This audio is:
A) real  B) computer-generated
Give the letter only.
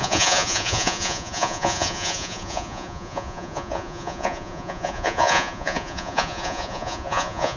B